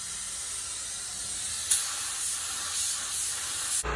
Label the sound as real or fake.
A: real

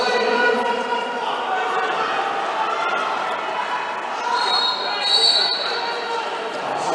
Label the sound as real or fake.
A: real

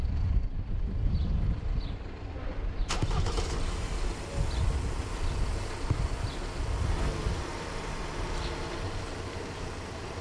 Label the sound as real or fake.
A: real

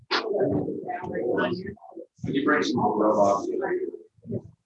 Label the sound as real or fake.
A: real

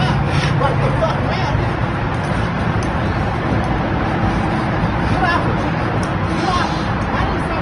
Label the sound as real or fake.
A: real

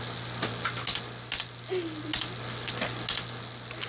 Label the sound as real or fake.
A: real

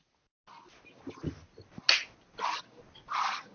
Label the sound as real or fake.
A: real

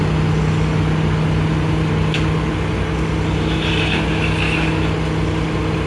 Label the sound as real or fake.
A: real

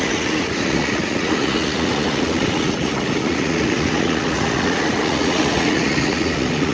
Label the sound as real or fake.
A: fake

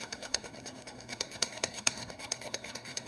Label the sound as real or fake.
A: fake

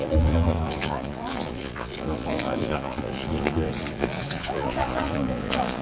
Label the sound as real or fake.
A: fake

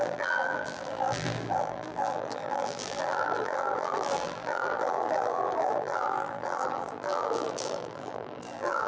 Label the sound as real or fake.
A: fake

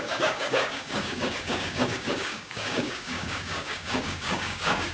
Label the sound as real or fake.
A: fake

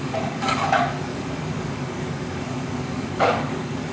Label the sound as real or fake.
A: fake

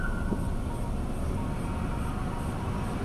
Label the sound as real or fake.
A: real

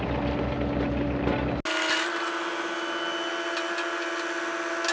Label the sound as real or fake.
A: real